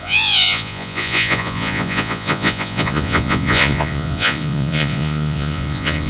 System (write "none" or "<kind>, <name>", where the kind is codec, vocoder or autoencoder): vocoder, Vocos